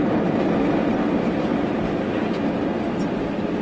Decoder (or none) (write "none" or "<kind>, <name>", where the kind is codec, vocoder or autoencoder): none